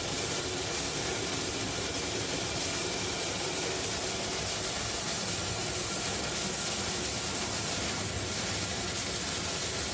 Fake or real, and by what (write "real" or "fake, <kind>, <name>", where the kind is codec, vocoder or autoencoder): real